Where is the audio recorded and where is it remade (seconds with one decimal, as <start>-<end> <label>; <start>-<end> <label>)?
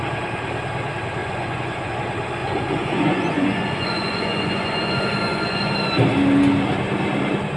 0.0-1.2 recorded; 1.2-1.9 remade; 1.9-2.4 recorded; 2.4-5.7 remade; 5.7-7.6 recorded